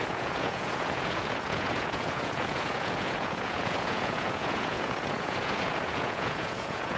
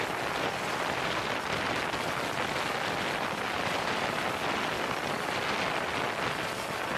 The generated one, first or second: first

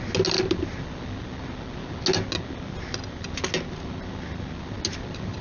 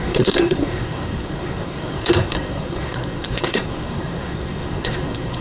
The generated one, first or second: second